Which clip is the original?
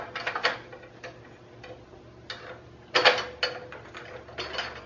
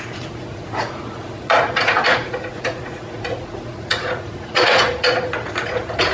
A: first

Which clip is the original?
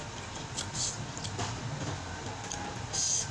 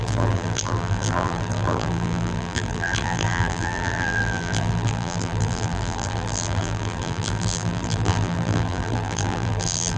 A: first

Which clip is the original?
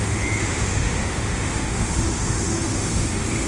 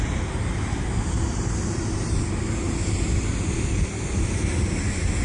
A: second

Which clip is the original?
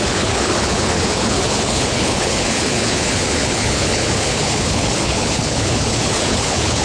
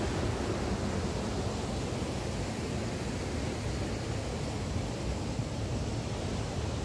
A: second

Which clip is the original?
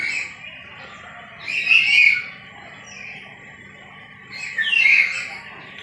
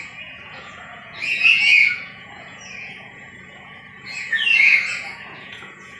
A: first